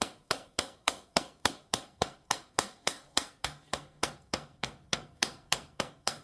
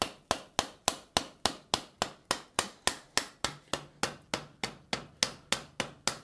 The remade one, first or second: first